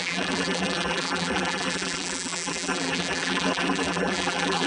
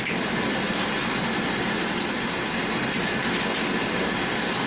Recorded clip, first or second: second